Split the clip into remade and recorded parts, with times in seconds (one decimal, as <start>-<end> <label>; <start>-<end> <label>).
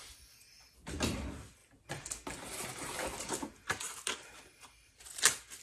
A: 0.0-5.6 recorded